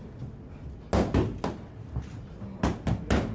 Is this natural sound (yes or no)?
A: yes